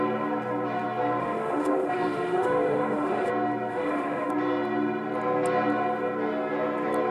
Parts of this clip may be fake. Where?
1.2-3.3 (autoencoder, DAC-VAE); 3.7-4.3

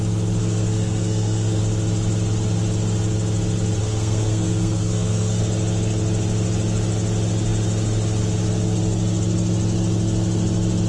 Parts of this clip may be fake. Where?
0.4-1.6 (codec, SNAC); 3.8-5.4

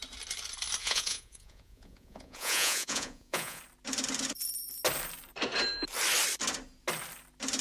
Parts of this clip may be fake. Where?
0.8-3.6 (vocoder, Vocos)

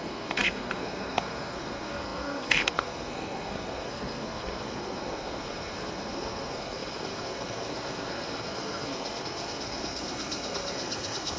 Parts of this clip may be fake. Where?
0.0-11.4 (codec, SNAC)

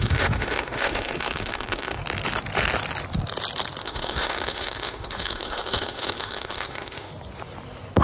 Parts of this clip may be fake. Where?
0.0-2.0 (autoencoder, DAC-VAE); 3.8-7.1